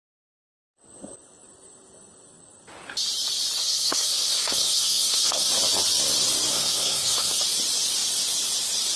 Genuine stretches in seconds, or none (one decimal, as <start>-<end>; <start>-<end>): 0.0-3.6; 5.5-6.5; 7.4-9.0